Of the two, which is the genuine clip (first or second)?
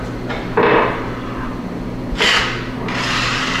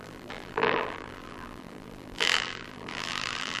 first